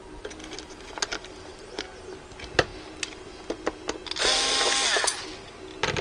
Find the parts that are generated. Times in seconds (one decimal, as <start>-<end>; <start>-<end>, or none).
none